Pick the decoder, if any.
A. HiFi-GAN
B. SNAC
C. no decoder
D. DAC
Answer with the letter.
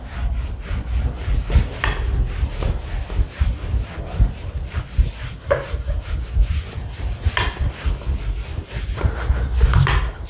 C